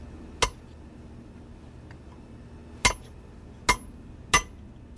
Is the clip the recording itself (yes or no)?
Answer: yes